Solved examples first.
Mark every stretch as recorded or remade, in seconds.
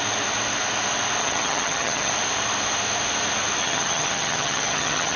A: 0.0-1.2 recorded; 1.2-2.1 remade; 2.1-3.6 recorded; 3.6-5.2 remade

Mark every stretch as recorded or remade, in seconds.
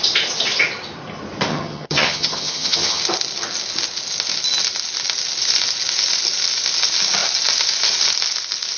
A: 0.0-1.5 recorded; 1.5-3.0 remade; 3.0-8.8 recorded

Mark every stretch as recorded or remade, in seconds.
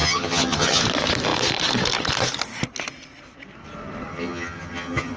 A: 0.0-0.8 remade; 0.8-4.1 recorded; 4.1-5.2 remade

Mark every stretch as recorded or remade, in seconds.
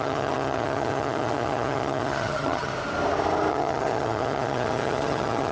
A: 0.0-2.7 remade; 2.7-3.5 recorded; 3.5-5.5 remade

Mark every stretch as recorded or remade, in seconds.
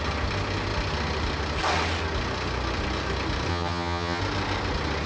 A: 0.0-3.5 recorded; 3.5-4.2 remade; 4.2-5.1 recorded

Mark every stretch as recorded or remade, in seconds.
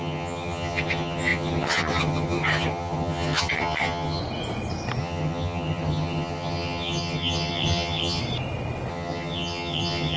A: 0.0-4.2 remade; 4.2-5.0 recorded; 5.0-8.2 remade; 8.2-8.9 recorded; 8.9-10.2 remade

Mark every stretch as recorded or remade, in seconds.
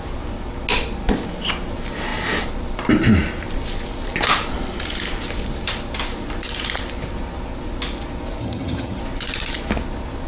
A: 0.0-8.4 recorded; 8.4-9.0 remade; 9.0-10.3 recorded